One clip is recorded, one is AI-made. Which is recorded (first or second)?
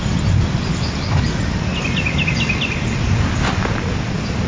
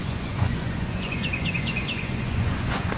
first